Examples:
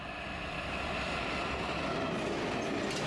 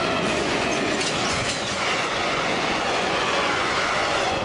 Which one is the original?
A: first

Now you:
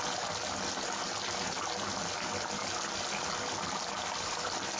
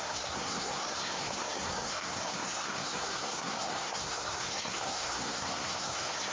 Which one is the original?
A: first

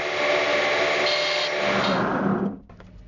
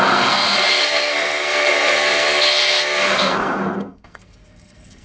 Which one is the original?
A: first